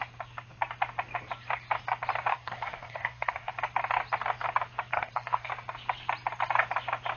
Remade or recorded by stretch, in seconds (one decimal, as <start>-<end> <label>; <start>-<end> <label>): 0.0-2.3 recorded; 2.3-3.5 remade; 3.5-4.9 recorded; 4.9-5.5 remade; 5.5-7.2 recorded